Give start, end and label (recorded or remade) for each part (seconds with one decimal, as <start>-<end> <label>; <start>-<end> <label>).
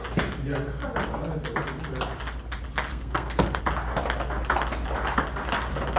0.0-2.9 recorded; 2.9-3.6 remade; 3.6-6.0 recorded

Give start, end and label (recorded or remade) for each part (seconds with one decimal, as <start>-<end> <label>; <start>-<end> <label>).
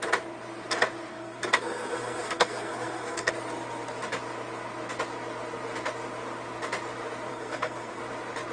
0.0-1.1 recorded; 1.1-3.3 remade; 3.3-7.3 recorded; 7.3-8.0 remade; 8.0-8.5 recorded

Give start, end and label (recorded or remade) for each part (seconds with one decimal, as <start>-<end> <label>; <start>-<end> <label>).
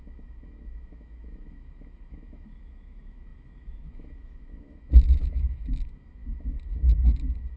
0.0-7.6 remade